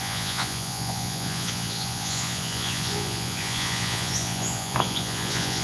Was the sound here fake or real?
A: fake